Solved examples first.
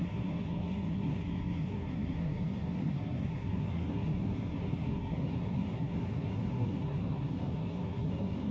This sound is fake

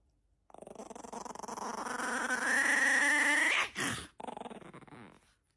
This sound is real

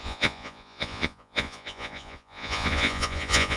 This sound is fake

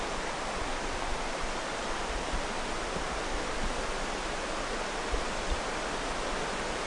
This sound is real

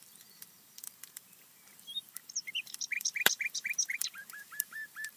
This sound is fake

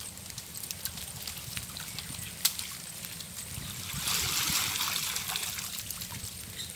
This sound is real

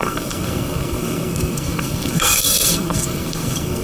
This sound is fake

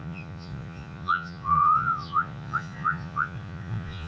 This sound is fake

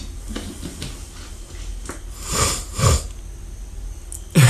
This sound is real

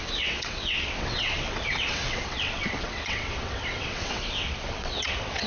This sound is fake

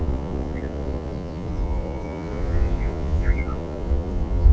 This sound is fake